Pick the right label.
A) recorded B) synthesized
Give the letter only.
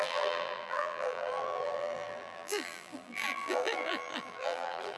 B